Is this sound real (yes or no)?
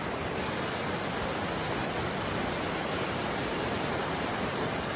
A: yes